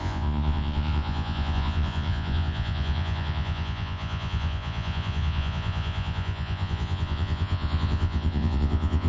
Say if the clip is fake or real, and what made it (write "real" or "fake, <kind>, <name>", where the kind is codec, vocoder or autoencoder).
fake, vocoder, Vocos